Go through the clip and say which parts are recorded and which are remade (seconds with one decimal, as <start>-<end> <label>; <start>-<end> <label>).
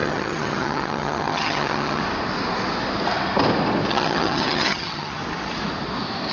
0.0-2.0 remade; 2.0-3.9 recorded; 3.9-5.2 remade; 5.2-6.3 recorded